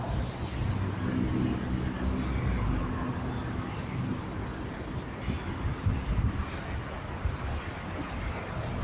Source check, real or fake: real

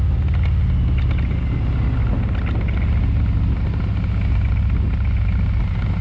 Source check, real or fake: real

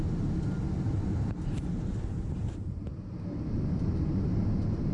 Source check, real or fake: real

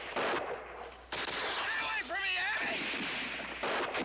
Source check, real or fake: real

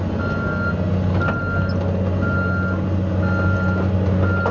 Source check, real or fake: real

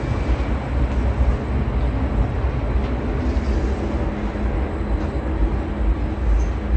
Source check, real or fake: real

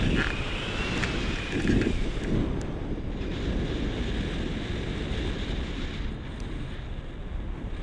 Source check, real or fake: real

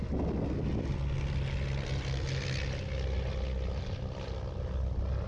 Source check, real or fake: real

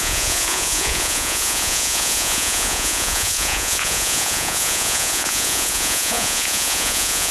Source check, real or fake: fake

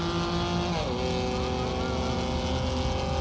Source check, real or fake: real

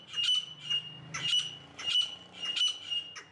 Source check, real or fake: real